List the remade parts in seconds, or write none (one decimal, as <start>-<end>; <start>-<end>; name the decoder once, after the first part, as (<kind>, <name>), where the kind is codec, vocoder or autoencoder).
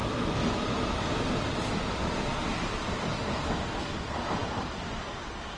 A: none